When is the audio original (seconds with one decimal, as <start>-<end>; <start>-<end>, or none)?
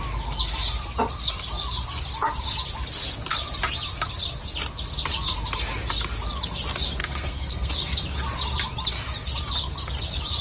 0.0-7.0; 7.7-10.4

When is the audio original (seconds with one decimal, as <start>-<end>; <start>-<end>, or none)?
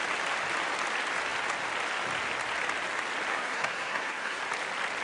0.0-3.3; 4.4-5.0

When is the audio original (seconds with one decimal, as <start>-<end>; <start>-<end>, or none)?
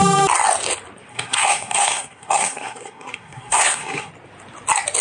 0.0-1.1; 4.1-5.0